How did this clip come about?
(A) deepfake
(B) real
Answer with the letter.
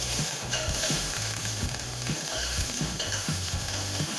A